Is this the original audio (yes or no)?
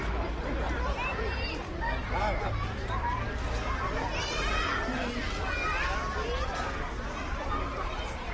yes